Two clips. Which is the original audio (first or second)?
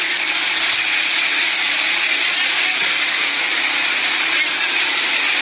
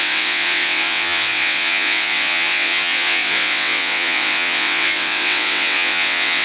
first